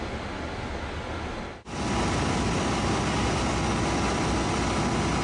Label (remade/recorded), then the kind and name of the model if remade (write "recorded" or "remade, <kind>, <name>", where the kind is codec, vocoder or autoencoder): recorded